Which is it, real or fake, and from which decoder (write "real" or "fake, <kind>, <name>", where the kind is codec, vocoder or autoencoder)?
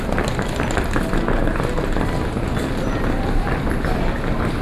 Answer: real